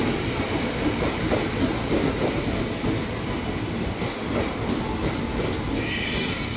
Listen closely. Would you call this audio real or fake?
real